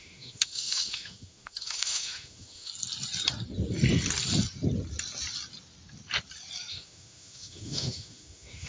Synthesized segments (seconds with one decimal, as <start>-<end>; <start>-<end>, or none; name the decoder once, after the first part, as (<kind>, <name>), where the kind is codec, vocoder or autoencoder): 0.0-2.7 (autoencoder, DAC-VAE); 6.7-8.7